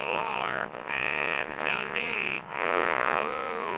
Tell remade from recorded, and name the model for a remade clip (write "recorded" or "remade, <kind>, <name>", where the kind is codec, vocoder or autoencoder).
remade, vocoder, Vocos